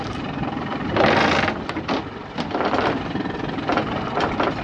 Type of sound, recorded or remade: remade